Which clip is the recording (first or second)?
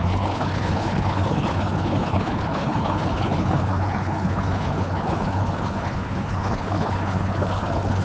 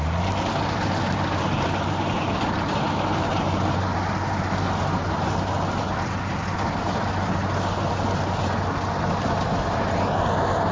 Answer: second